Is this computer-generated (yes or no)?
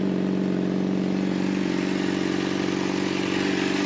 no